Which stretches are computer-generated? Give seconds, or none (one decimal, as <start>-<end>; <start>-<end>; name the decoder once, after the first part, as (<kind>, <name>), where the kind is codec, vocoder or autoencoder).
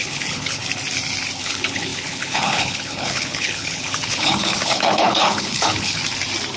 0.0-0.6 (codec, HILCodec); 1.4-6.0